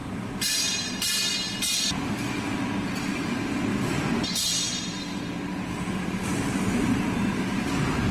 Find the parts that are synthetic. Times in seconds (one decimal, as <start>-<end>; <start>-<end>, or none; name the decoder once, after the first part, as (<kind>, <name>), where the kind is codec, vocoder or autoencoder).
3.7-5.2 (vocoder, BigVGAN v2)